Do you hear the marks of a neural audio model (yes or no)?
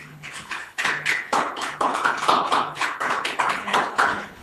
yes